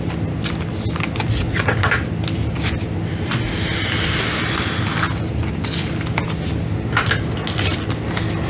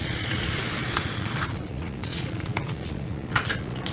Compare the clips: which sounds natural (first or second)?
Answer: first